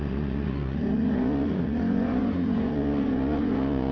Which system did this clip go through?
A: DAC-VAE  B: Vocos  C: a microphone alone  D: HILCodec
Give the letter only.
B